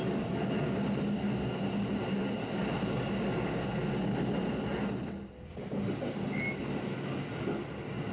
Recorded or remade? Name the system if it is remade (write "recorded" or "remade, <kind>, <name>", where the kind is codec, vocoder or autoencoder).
recorded